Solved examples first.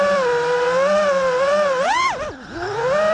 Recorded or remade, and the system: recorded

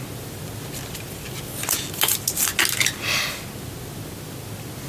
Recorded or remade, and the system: recorded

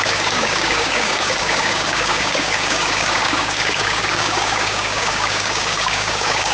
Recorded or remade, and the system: remade, codec, DAC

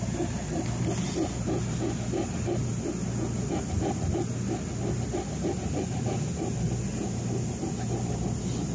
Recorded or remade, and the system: recorded